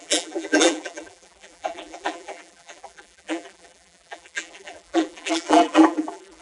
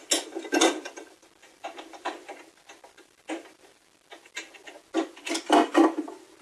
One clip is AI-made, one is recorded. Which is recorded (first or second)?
second